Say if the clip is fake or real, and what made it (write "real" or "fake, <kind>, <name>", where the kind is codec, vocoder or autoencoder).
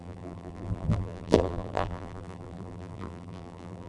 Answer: fake, vocoder, BigVGAN v2